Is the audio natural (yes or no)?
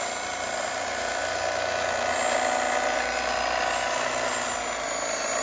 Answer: yes